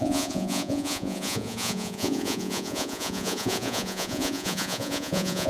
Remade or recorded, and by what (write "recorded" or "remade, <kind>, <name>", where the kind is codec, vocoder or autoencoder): remade, vocoder, Vocos